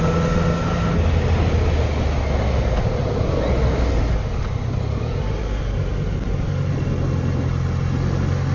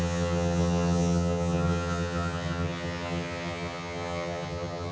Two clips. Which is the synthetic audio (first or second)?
second